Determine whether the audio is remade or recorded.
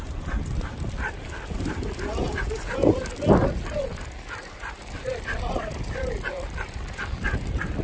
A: recorded